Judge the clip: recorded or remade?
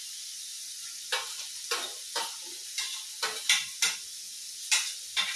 recorded